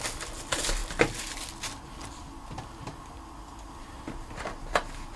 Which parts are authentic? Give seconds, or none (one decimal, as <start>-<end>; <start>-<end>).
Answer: 0.0-5.2